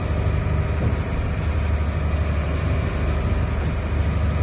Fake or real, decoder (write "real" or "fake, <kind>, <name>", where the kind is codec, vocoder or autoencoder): real